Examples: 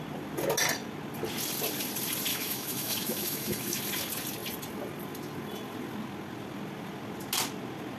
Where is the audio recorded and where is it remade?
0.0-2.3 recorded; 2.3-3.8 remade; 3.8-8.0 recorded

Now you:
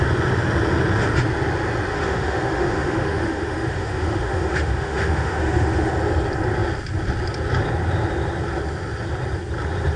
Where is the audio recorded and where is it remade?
0.0-1.9 recorded; 1.9-5.9 remade; 5.9-10.0 recorded